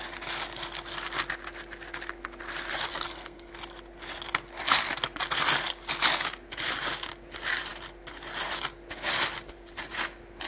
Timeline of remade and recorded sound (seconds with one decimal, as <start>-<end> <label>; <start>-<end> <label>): 0.0-2.9 recorded; 2.9-3.5 remade; 3.5-10.5 recorded